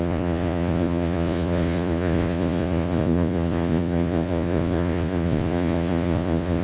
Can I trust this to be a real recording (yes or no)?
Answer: no